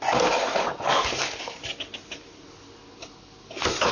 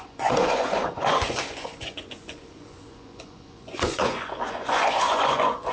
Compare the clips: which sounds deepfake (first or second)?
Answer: second